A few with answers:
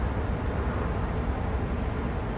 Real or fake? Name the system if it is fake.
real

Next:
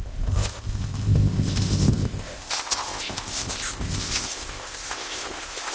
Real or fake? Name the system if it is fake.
fake, codec, ZipCodec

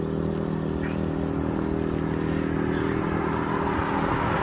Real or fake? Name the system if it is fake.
real